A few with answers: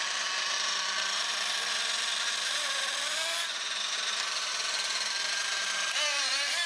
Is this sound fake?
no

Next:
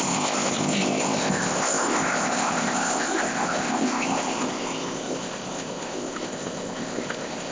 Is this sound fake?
yes